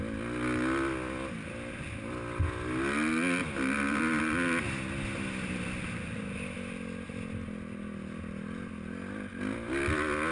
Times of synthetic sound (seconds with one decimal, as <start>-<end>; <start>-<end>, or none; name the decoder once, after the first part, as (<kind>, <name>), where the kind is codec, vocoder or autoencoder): none